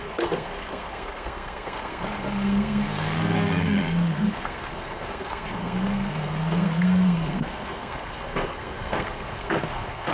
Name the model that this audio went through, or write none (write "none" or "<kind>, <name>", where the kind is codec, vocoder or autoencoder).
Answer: codec, SNAC